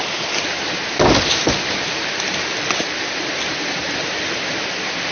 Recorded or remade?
recorded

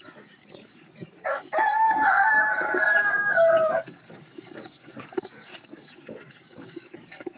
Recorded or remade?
remade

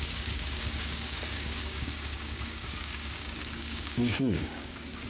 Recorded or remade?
remade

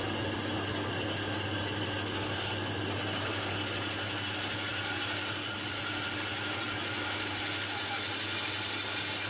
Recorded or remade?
recorded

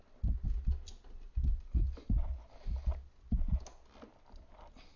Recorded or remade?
recorded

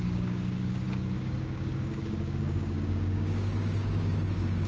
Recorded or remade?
remade